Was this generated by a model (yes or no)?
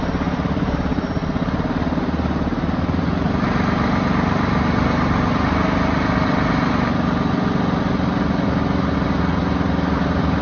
no